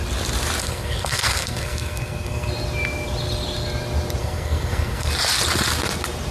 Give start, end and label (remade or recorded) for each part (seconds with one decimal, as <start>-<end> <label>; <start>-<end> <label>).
0.0-0.6 recorded; 0.6-2.5 remade; 2.5-4.2 recorded; 4.2-5.1 remade; 5.1-6.3 recorded